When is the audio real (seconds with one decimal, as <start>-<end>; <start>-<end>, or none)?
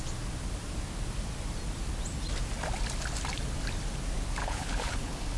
0.0-4.4